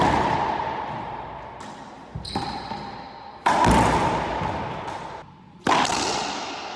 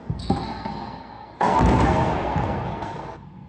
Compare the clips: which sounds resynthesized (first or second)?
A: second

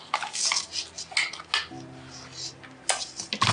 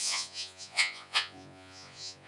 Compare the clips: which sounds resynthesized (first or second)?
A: second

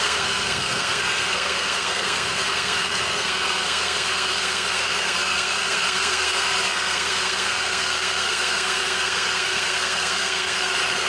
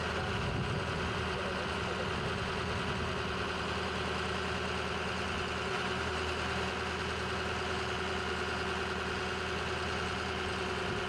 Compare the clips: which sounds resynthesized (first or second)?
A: first